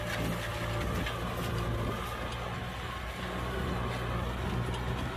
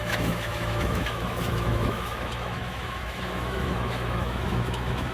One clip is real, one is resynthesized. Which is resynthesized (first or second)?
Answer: second